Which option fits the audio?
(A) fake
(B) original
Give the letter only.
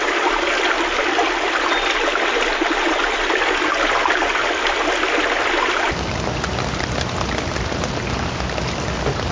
B